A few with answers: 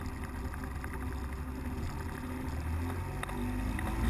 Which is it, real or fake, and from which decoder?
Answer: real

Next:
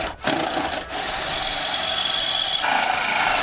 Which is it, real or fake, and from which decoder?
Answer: real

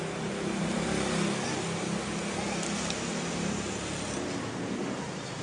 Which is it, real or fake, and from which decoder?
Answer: real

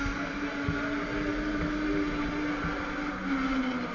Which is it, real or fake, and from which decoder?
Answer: real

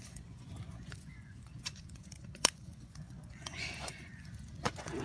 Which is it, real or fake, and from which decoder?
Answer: fake, vocoder, Vocos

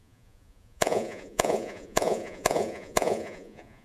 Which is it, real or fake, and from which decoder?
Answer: fake, vocoder, Vocos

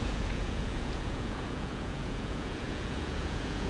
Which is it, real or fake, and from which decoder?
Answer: fake, vocoder, Vocos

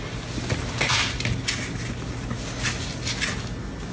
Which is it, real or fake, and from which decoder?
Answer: real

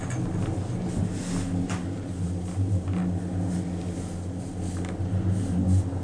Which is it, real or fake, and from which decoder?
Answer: real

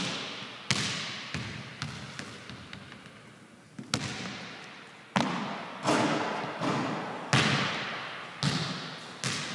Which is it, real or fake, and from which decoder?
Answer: real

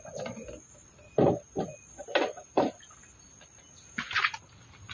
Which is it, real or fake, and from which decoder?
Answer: real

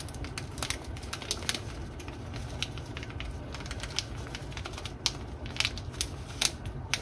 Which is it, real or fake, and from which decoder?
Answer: real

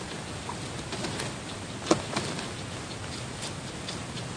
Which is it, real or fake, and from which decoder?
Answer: real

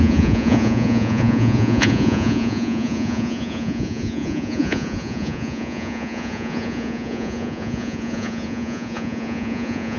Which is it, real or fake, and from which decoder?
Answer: fake, vocoder, Vocos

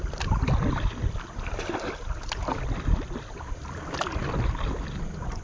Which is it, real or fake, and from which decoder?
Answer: real